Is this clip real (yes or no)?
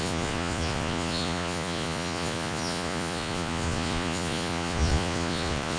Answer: no